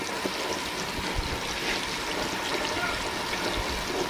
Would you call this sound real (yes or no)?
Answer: yes